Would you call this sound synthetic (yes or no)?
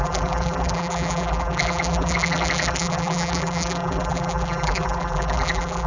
yes